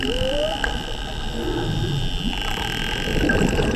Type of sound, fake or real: real